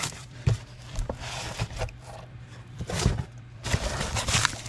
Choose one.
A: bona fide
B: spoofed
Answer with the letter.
B